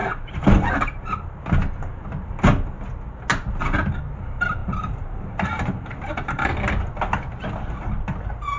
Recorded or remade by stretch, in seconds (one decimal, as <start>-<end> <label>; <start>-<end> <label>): 0.0-1.0 remade; 1.0-4.6 recorded; 4.6-6.5 remade; 6.5-8.6 recorded